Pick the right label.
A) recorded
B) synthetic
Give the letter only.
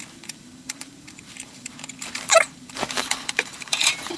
B